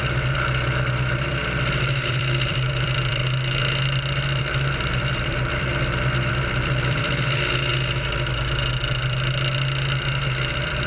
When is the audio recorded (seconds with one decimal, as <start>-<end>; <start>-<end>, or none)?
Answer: 3.2-4.4; 5.7-6.3; 7.7-10.5